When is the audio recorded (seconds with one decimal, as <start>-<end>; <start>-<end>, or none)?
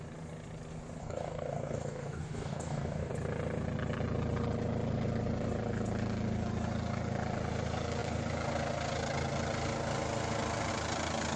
0.0-1.0; 3.1-11.4